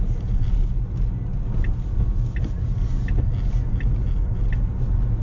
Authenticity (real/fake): real